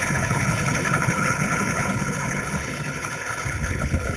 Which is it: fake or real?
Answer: fake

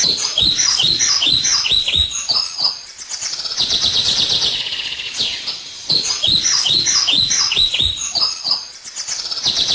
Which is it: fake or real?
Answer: fake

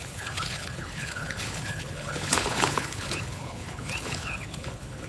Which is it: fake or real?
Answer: fake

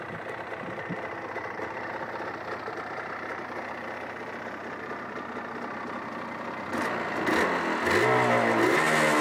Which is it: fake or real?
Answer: real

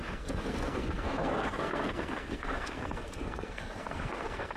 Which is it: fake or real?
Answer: fake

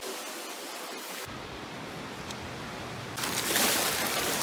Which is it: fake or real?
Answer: real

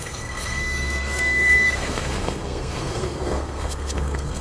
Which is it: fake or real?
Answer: fake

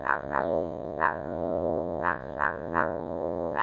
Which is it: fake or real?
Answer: fake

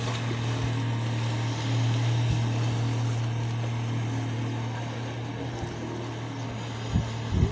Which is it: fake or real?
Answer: real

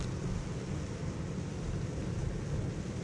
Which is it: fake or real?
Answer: real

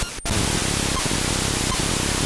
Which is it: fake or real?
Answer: real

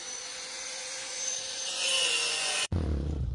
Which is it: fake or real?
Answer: fake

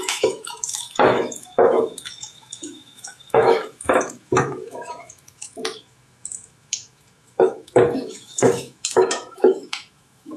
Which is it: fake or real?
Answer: fake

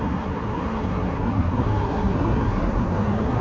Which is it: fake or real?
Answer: fake